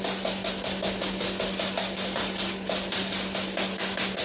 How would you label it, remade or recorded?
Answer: recorded